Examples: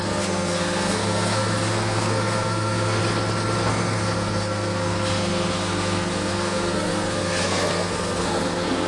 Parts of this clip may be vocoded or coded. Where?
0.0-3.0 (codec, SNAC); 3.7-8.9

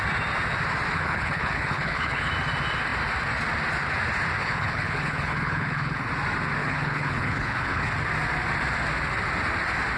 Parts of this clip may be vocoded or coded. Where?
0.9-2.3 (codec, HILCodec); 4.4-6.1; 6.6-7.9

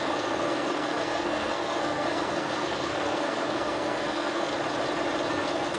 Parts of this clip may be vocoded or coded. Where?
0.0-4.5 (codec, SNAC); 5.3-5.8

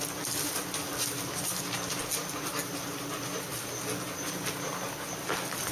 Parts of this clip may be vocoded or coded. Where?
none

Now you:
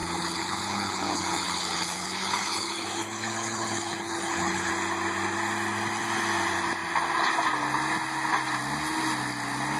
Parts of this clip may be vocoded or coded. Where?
0.0-4.7 (codec, HILCodec)

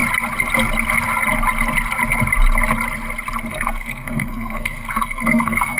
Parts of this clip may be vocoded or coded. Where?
3.5-5.8 (codec, SNAC)